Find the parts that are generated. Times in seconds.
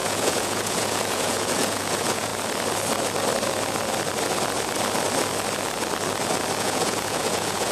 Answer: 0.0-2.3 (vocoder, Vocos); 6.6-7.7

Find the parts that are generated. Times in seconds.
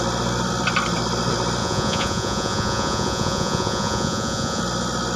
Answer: 1.6-4.6 (vocoder, Vocos)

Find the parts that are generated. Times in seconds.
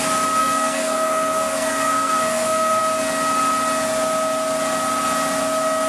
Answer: 0.4-2.8 (codec, SNAC)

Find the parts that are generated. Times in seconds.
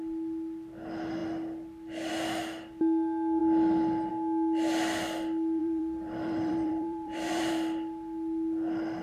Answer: 5.6-7.5 (vocoder, BigVGAN v2)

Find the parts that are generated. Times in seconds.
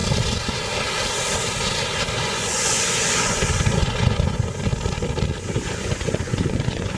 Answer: 2.2-4.7 (vocoder, Vocos); 5.4-7.0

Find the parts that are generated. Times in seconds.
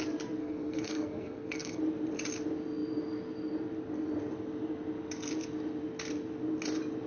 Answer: 0.4-1.8 (codec, SNAC)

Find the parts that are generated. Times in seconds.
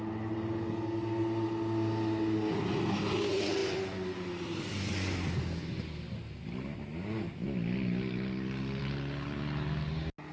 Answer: none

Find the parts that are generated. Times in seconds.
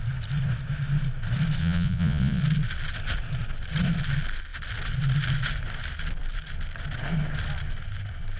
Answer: 1.6-2.4 (vocoder, Vocos)